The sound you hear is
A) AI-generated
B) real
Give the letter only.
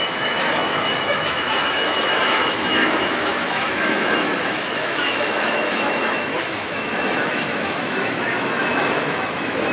A